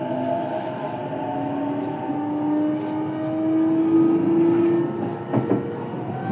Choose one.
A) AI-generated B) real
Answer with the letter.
B